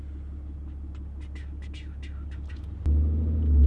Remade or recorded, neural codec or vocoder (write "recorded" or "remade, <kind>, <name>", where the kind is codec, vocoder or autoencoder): recorded